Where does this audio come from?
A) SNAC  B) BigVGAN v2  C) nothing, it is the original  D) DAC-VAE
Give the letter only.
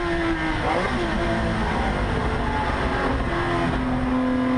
C